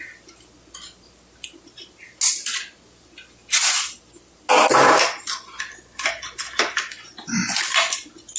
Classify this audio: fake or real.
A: real